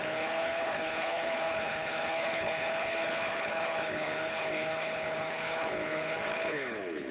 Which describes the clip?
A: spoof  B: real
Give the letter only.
A